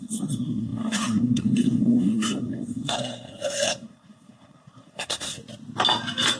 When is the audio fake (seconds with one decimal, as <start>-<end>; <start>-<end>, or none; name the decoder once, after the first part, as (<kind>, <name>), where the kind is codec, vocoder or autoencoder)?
0.0-5.4 (codec, SNAC)